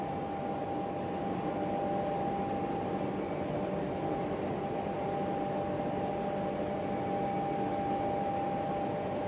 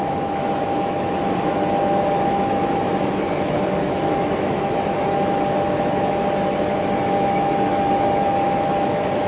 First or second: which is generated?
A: second